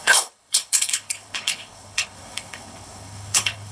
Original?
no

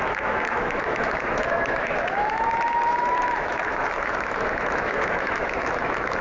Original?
no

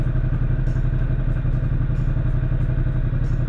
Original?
yes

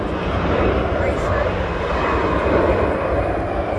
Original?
yes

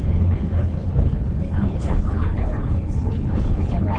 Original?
no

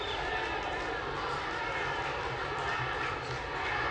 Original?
yes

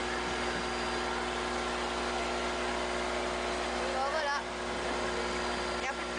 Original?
yes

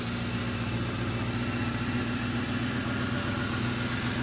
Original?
yes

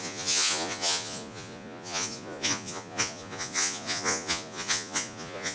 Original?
no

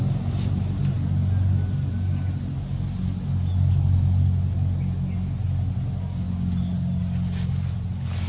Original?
yes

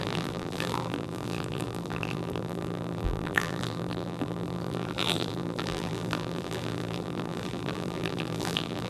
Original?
no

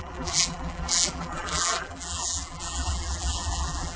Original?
no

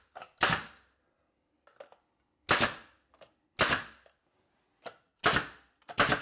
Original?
yes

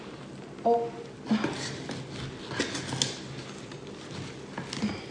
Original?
yes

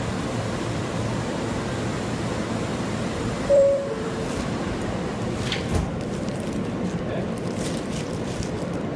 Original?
no